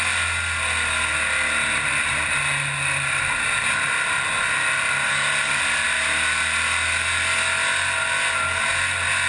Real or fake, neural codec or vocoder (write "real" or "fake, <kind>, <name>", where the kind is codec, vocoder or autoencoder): real